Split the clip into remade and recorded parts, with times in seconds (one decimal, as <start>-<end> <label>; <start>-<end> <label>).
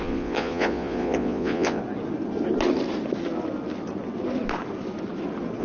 0.0-1.8 remade; 1.8-5.6 recorded